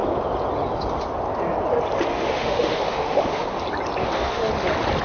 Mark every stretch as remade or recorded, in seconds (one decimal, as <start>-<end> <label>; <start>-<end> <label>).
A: 0.0-2.1 recorded; 2.1-3.6 remade; 3.6-4.0 recorded; 4.0-4.5 remade; 4.5-5.0 recorded

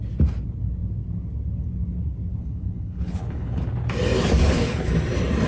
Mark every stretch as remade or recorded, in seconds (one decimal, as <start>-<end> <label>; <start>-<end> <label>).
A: 0.0-2.3 recorded; 2.3-3.6 remade; 3.6-4.4 recorded; 4.4-4.9 remade; 4.9-5.5 recorded

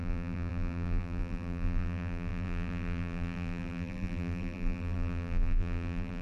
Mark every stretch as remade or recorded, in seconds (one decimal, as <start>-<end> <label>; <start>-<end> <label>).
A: 0.0-6.2 remade

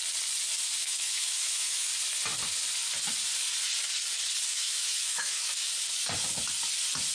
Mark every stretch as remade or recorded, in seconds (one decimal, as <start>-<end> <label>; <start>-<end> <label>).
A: 0.0-0.8 recorded; 0.8-1.9 remade; 1.9-4.5 recorded; 4.5-5.7 remade; 5.7-7.1 recorded